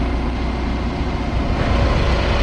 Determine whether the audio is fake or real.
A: real